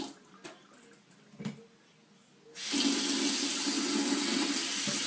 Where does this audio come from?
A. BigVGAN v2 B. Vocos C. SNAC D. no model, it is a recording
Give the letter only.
D